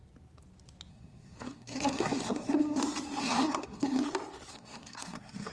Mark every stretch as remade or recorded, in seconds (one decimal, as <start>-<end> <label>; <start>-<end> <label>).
0.0-0.9 recorded; 0.9-2.8 remade; 2.8-3.2 recorded; 3.2-4.0 remade; 4.0-4.5 recorded; 4.5-5.5 remade